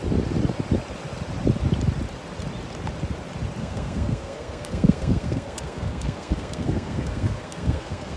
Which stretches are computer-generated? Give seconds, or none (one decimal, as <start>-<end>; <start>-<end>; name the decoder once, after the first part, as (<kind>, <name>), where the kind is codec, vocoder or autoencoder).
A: 3.6-8.2 (codec, SNAC)